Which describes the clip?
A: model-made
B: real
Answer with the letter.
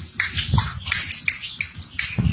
B